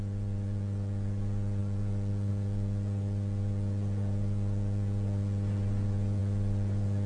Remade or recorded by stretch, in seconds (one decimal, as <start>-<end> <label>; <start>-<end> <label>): 0.0-7.1 remade